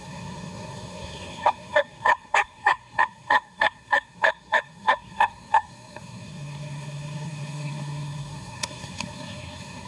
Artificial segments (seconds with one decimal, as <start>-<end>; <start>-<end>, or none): 0.0-9.9